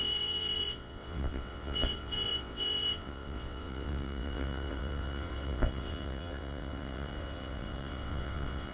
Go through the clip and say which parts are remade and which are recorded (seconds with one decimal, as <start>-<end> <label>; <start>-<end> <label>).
0.0-8.7 remade